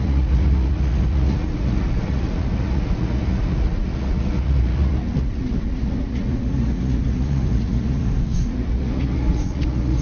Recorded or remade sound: remade